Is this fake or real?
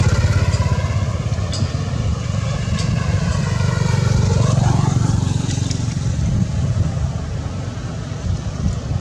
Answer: real